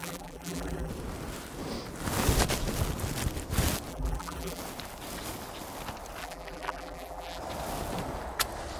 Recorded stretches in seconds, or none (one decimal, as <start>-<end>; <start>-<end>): 0.9-3.9; 4.6-6.2; 7.4-8.8